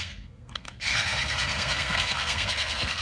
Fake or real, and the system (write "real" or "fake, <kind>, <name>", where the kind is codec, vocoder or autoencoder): fake, codec, SNAC